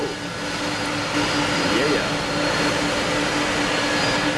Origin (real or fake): real